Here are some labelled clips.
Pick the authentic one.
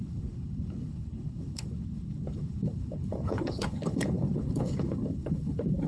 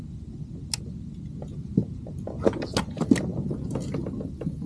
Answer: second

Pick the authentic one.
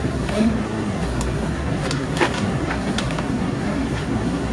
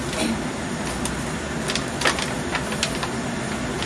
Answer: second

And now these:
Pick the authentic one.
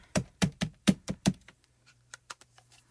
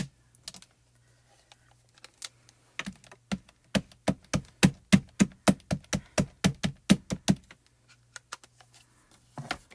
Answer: second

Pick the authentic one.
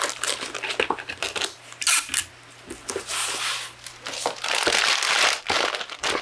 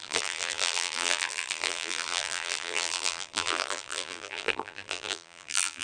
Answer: first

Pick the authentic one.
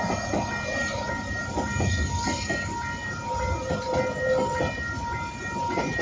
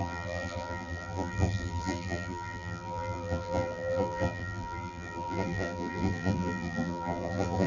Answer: first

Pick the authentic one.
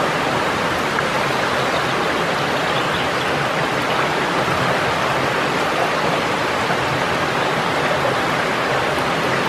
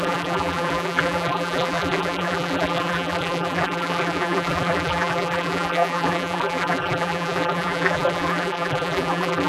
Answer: first